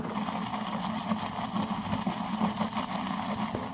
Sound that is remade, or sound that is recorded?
recorded